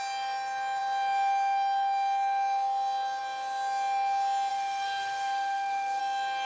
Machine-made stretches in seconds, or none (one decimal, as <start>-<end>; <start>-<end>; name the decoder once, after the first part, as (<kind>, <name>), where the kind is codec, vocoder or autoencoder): 4.5-6.0 (codec, SNAC)